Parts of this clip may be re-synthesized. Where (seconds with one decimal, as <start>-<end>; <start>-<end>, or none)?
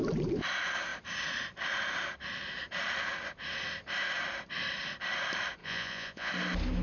5.6-6.3